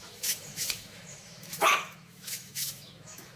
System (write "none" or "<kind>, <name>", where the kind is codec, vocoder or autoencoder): autoencoder, DAC-VAE